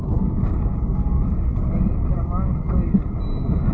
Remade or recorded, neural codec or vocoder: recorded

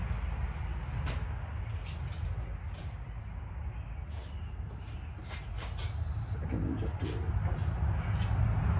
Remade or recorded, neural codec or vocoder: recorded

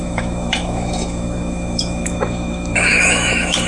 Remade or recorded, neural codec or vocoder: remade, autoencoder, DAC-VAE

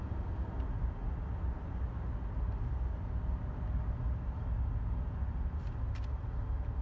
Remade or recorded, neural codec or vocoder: recorded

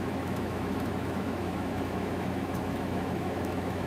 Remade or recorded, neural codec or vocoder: remade, autoencoder, DAC-VAE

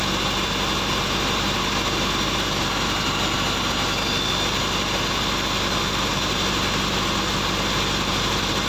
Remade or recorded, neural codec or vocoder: recorded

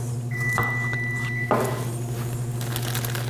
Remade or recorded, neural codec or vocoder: recorded